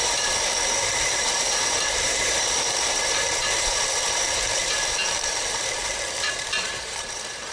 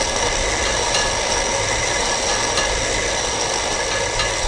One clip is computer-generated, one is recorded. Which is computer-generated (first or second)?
first